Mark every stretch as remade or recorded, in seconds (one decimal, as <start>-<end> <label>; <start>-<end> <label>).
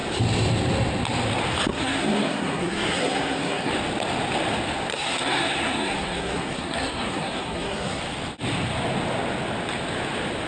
0.0-1.7 recorded; 1.7-3.7 remade; 3.7-4.9 recorded; 4.9-8.0 remade; 8.0-10.5 recorded